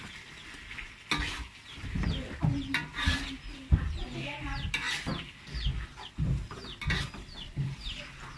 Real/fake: real